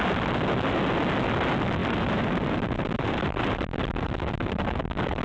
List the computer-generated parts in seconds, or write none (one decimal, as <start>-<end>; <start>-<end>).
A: 1.8-5.2

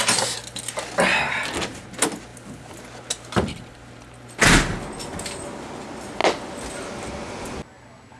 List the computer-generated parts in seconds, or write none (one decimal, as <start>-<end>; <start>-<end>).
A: none

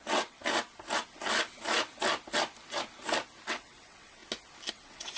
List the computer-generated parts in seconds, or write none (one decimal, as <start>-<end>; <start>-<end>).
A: 0.0-0.4; 3.5-4.2; 4.7-5.2

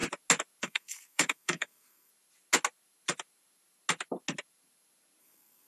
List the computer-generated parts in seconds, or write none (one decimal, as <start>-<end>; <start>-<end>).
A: 0.6-2.1; 5.2-5.7

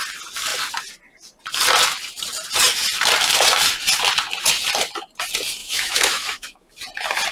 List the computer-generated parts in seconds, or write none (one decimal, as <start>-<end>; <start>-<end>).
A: 5.6-6.7

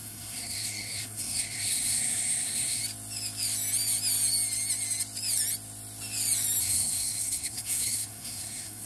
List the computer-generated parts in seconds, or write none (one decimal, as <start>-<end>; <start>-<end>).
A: 0.0-2.8; 6.6-8.9

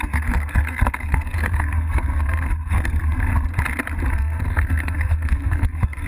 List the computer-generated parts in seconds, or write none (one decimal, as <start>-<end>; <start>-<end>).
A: 0.0-3.3; 4.1-6.1

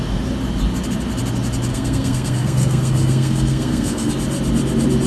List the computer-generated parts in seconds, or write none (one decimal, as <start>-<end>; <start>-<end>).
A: 1.7-4.1